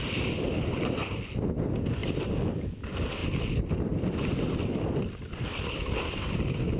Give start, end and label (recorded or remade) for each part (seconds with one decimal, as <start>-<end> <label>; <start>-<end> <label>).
0.0-6.8 recorded